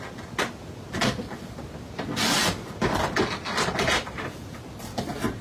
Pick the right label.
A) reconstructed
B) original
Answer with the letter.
B